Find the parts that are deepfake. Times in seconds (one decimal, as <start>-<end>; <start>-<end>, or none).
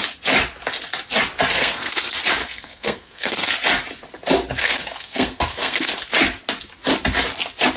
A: 1.5-2.0; 2.4-3.5; 4.6-5.9